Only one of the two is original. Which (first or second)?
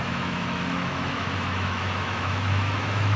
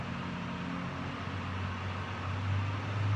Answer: second